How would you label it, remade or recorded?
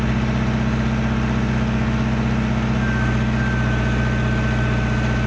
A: recorded